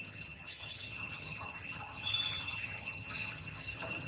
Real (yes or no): no